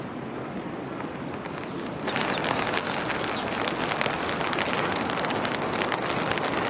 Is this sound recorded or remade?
recorded